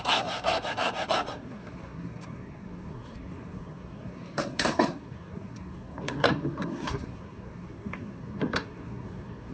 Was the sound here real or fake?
fake